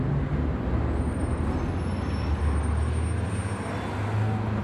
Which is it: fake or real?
real